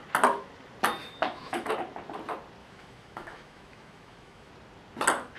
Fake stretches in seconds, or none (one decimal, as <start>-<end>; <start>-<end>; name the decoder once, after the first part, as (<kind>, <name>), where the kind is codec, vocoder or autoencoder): 1.0-1.7 (autoencoder, DAC-VAE); 2.6-4.5